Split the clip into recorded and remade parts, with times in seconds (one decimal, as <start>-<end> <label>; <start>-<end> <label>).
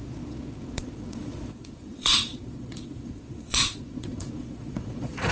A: 0.0-5.3 remade